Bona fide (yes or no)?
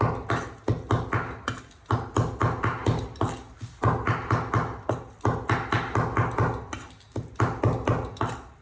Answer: yes